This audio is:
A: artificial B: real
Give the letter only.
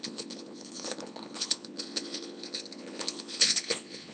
A